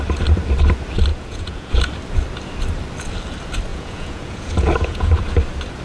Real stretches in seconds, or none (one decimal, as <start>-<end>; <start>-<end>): 0.0-1.1; 1.7-3.7; 5.2-5.8